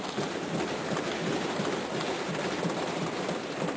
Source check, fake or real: real